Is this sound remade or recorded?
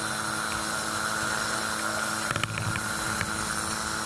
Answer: recorded